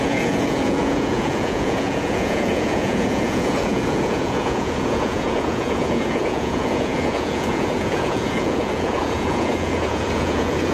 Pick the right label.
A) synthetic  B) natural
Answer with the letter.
A